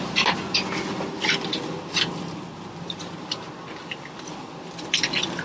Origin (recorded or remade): recorded